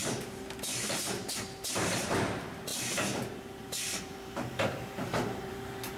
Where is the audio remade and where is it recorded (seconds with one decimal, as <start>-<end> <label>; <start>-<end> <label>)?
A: 0.0-0.8 recorded; 0.8-6.0 remade